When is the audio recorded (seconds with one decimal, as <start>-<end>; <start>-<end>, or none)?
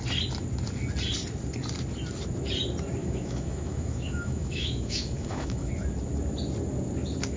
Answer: 0.0-3.0; 5.7-7.4